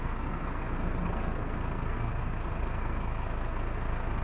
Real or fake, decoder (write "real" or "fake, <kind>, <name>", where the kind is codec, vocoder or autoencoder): fake, codec, SNAC